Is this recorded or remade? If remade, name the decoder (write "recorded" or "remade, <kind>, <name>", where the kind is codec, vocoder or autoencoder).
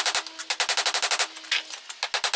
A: recorded